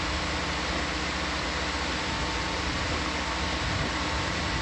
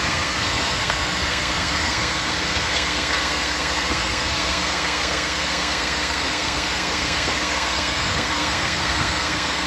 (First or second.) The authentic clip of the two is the first